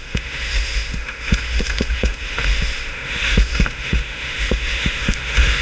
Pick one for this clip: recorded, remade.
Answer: remade